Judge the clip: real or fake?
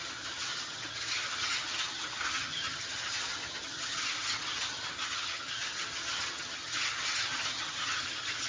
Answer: fake